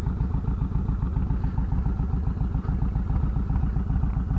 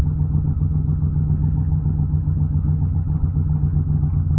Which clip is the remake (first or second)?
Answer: second